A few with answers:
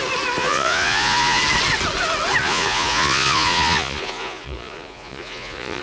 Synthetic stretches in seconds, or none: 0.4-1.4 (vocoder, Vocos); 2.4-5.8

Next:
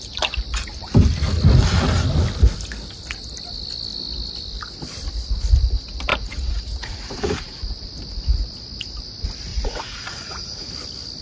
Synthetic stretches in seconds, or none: 6.1-7.6 (vocoder, Vocos); 9.5-10.7

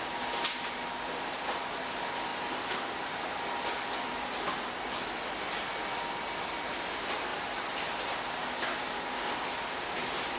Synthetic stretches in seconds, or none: none

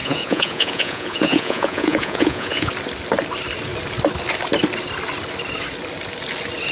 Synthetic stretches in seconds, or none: 0.0-2.7 (vocoder, Vocos)

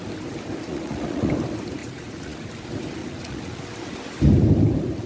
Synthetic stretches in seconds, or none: 0.7-1.3 (vocoder, Vocos); 1.8-2.5; 3.0-3.6

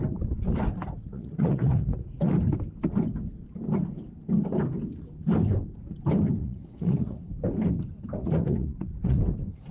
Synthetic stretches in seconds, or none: 1.0-2.3 (vocoder, Vocos); 6.4-7.3; 8.2-9.2